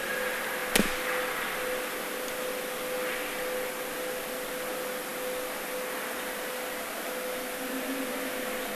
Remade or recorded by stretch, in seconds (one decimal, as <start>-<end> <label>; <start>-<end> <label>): 0.0-8.7 recorded